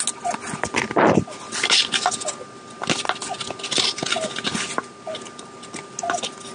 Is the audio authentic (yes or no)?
yes